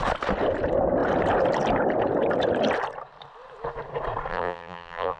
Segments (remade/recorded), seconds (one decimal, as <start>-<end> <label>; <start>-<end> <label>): 0.0-4.3 recorded; 4.3-5.2 remade